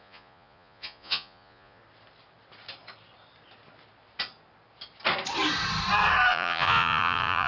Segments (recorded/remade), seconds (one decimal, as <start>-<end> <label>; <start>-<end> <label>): 0.0-1.8 remade; 1.8-6.3 recorded; 6.3-7.5 remade